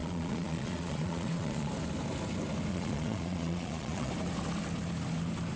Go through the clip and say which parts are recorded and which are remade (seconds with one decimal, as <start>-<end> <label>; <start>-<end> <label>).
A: 0.0-1.7 remade; 1.7-2.7 recorded; 2.7-4.1 remade; 4.1-5.6 recorded